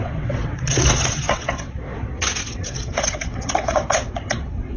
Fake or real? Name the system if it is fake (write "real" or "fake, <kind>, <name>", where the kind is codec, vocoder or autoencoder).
fake, vocoder, WaveNeXt